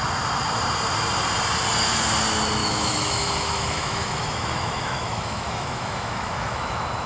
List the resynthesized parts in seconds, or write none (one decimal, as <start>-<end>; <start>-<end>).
2.6-7.1